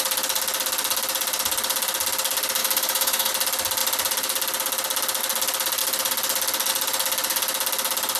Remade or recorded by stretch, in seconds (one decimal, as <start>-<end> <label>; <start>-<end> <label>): 0.0-2.6 recorded; 2.6-3.3 remade; 3.3-8.2 recorded